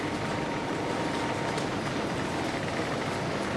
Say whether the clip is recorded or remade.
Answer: recorded